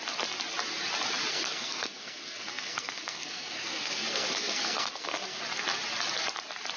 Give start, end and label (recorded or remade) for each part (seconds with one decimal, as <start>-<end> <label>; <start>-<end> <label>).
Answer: 0.0-1.3 recorded; 1.3-5.4 remade; 5.4-6.8 recorded